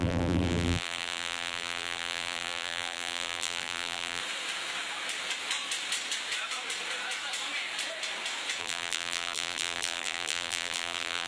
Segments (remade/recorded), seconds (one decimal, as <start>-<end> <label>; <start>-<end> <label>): 0.0-4.2 remade; 4.2-8.6 recorded; 8.6-11.3 remade